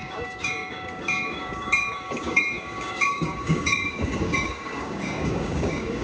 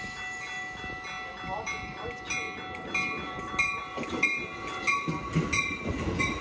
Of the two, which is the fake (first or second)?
first